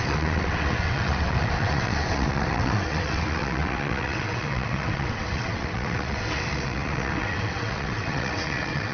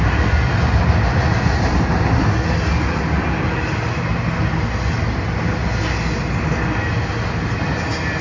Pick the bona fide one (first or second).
second